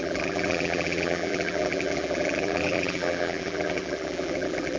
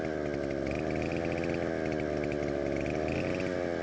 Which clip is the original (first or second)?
second